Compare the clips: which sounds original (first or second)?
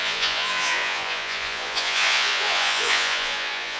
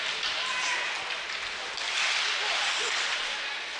second